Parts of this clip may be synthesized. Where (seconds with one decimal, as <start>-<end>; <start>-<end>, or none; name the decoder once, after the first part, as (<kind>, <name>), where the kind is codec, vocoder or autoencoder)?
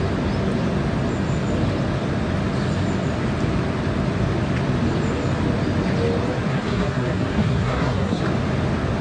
6.5-8.2 (codec, SNAC)